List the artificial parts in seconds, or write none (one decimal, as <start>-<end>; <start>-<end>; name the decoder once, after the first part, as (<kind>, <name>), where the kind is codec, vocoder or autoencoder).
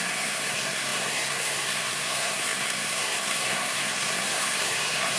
0.0-5.2 (codec, SNAC)